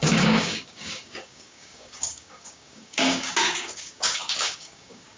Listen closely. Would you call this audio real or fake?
fake